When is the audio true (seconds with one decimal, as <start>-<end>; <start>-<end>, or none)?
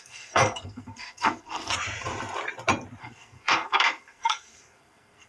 1.7-3.0